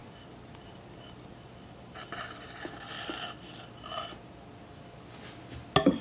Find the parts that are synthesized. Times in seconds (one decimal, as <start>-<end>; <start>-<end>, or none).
0.0-3.6